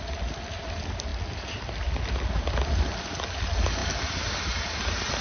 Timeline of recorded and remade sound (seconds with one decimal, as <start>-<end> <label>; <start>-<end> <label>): 0.0-5.2 recorded